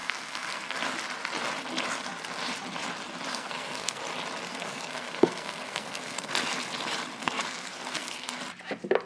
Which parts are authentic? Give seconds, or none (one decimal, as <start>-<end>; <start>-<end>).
0.8-3.3; 4.0-4.5; 6.3-7.2; 8.4-9.1